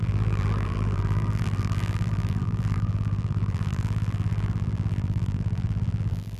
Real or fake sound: fake